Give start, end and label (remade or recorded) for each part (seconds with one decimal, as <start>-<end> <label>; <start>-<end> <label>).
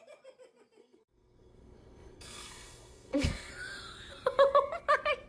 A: 0.0-0.8 recorded; 0.8-3.5 remade; 3.5-5.3 recorded